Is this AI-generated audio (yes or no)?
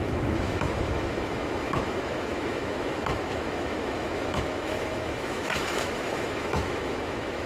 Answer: yes